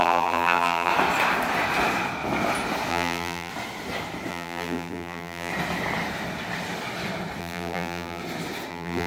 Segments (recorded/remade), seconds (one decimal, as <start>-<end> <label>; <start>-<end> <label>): 0.0-0.9 remade; 0.9-2.9 recorded; 2.9-3.5 remade; 3.5-4.3 recorded; 4.3-5.5 remade; 5.5-7.4 recorded; 7.4-8.2 remade; 8.2-8.7 recorded; 8.7-9.1 remade